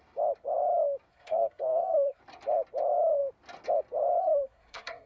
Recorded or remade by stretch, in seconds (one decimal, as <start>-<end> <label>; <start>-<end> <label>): 0.0-1.1 recorded; 1.1-2.2 remade; 2.2-4.2 recorded; 4.2-5.1 remade